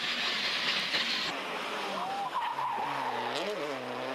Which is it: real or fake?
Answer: real